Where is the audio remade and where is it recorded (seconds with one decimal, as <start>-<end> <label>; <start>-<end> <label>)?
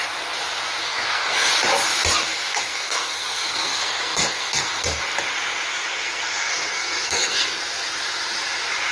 0.0-0.8 recorded; 0.8-1.5 remade; 1.5-2.3 recorded; 2.3-5.0 remade; 5.0-5.9 recorded; 5.9-7.6 remade; 7.6-8.9 recorded